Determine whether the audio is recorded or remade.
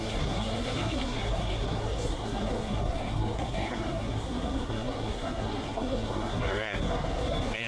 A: remade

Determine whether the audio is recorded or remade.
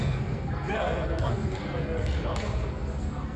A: remade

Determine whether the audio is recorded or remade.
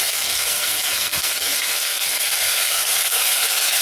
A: remade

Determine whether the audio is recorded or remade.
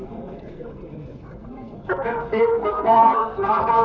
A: remade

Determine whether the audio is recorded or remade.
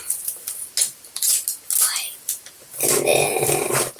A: recorded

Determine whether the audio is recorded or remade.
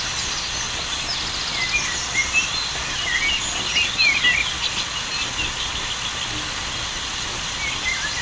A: recorded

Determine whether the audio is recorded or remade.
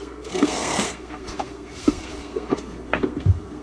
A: remade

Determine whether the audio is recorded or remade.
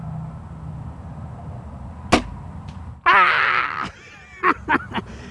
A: recorded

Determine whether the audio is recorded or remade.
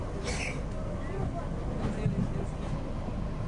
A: recorded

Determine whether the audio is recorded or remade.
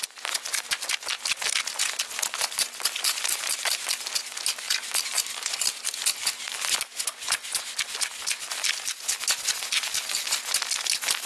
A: recorded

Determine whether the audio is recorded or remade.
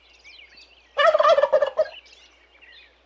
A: recorded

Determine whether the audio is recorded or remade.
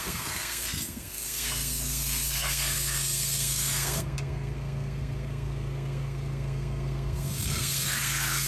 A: remade